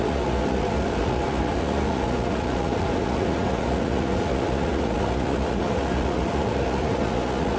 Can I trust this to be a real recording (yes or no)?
no